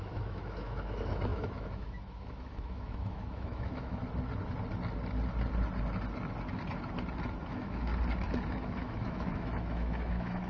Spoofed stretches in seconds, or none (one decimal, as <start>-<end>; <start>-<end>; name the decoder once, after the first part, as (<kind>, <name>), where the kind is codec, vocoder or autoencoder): 0.0-4.0 (autoencoder, DAC-VAE); 7.5-7.9; 8.5-10.5